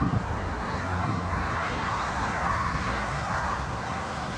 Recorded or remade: remade